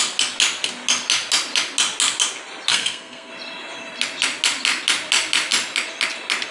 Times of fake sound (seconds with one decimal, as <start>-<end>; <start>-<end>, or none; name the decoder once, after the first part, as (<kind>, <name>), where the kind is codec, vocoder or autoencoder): 2.7-3.3 (codec, SNAC)